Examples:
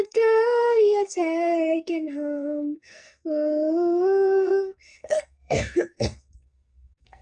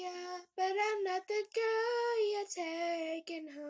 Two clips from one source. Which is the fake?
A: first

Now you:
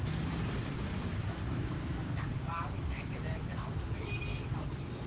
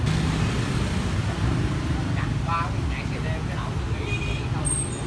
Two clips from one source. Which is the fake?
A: first